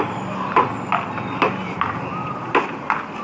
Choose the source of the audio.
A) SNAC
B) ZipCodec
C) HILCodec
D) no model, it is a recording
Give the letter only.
D